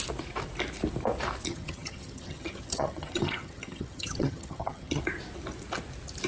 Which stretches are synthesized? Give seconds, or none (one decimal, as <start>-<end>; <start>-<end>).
1.5-5.0